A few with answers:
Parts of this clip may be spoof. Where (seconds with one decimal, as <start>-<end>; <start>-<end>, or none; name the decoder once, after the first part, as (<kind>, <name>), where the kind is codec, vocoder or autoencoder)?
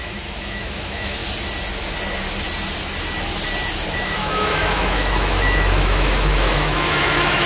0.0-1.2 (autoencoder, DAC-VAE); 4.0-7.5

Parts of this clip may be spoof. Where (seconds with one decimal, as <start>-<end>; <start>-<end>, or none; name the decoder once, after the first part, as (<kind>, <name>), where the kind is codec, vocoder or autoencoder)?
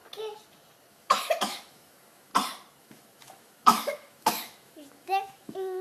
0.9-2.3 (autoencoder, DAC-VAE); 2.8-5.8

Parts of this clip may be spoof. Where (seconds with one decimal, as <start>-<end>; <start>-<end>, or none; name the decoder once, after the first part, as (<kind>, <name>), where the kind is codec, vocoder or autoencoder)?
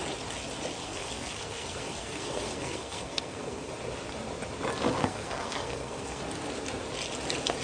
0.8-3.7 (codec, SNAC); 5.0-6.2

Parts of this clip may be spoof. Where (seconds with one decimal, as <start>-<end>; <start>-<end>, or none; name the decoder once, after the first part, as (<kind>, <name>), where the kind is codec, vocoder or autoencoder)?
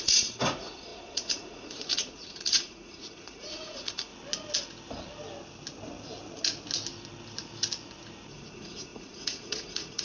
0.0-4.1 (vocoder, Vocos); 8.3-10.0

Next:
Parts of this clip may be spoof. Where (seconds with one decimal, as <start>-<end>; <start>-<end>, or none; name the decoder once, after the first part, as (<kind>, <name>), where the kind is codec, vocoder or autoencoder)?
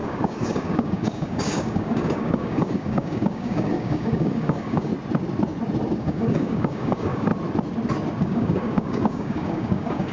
0.0-4.9 (codec, DAC); 6.0-7.3; 8.2-10.1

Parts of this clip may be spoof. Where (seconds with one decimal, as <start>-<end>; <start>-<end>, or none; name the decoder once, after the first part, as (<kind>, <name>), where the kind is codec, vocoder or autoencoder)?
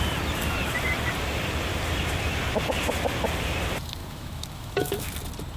4.0-5.1 (autoencoder, DAC-VAE)